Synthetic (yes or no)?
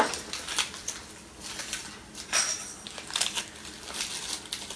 no